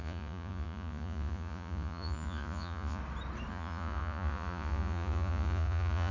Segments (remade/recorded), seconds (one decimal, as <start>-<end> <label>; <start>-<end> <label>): 0.0-3.0 remade; 3.0-3.5 recorded; 3.5-6.1 remade